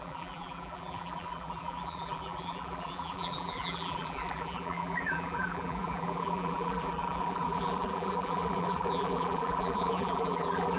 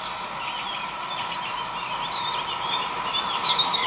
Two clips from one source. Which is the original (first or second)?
second